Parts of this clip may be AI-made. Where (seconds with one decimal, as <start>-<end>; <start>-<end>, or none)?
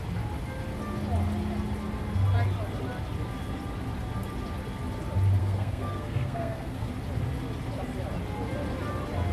5.4-6.9